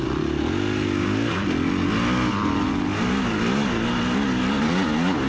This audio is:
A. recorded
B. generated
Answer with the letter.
A